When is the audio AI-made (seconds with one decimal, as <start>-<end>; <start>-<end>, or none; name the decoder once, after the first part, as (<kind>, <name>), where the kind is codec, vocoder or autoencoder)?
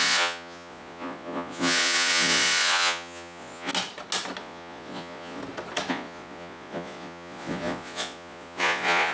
0.0-3.7 (vocoder, Vocos); 4.4-5.4; 5.9-9.1